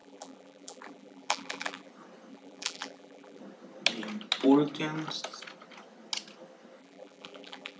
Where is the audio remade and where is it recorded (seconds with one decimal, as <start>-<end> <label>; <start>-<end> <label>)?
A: 0.0-1.9 remade; 1.9-2.3 recorded; 2.3-3.4 remade; 3.4-6.8 recorded; 6.8-7.8 remade